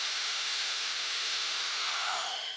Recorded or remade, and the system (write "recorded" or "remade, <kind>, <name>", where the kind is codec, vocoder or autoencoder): remade, autoencoder, DAC-VAE